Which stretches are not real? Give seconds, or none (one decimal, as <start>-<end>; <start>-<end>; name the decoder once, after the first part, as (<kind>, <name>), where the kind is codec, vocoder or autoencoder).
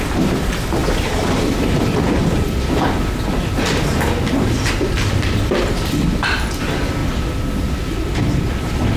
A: 0.8-2.0 (vocoder, BigVGAN v2)